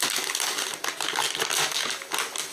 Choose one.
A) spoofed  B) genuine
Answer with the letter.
B